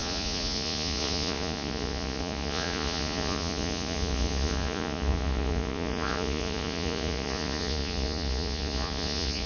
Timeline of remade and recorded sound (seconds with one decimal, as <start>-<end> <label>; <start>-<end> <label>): 0.0-9.5 remade